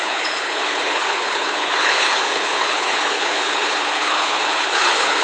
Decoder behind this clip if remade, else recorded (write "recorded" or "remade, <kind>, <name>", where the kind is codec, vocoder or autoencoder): remade, codec, HILCodec